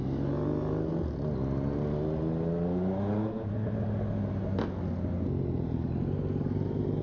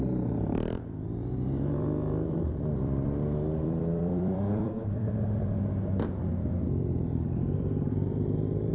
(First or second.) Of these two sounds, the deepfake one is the second